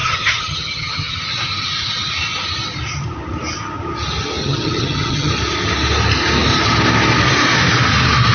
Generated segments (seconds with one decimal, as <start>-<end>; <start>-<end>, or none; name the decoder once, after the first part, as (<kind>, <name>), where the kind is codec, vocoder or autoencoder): 0.0-1.2 (vocoder, HiFi-GAN); 4.4-5.3